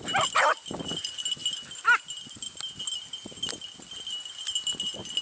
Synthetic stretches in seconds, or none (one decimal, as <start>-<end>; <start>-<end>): none